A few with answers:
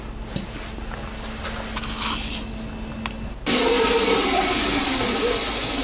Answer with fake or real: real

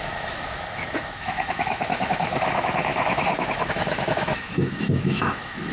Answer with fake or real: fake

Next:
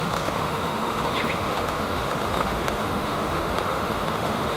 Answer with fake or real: fake